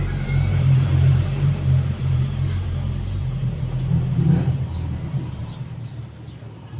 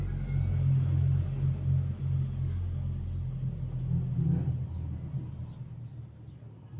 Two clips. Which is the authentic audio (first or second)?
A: second